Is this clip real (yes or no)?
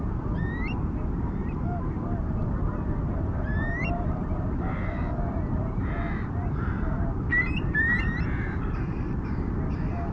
no